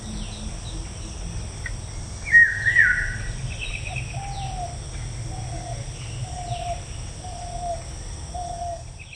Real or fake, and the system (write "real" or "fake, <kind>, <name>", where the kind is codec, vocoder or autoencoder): real